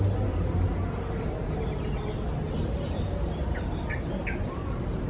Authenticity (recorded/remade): recorded